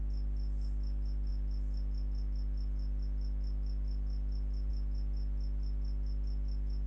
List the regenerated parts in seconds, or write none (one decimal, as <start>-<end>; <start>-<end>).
none